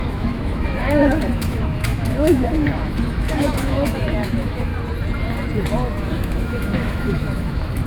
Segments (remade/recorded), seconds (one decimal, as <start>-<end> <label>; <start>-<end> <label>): 0.0-4.7 remade; 4.7-6.0 recorded; 6.0-7.9 remade

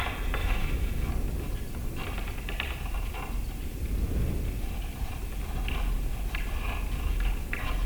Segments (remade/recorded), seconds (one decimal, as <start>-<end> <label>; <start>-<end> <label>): 0.0-0.4 recorded; 0.4-1.1 remade; 1.1-7.9 recorded

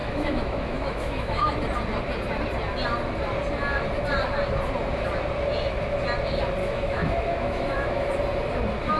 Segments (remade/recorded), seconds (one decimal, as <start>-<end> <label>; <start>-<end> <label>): 0.0-1.5 remade; 1.5-6.6 recorded; 6.6-8.1 remade; 8.1-9.0 recorded

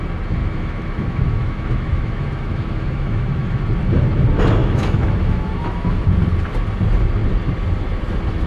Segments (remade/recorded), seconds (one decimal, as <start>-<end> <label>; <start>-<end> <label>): 0.0-0.4 recorded; 0.4-3.6 remade; 3.6-4.6 recorded; 4.6-6.1 remade; 6.1-8.5 recorded

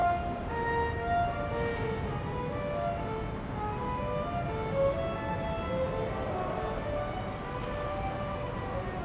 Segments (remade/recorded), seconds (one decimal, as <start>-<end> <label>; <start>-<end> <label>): 0.0-9.0 recorded